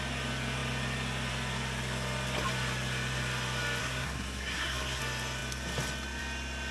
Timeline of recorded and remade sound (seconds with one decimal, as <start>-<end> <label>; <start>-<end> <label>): 0.0-3.8 recorded; 3.8-5.0 remade; 5.0-6.7 recorded